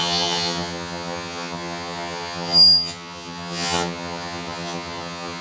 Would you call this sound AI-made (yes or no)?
yes